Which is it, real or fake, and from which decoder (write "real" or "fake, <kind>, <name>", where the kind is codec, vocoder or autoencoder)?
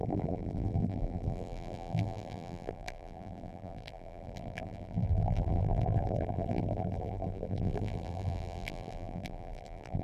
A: fake, vocoder, BigVGAN v2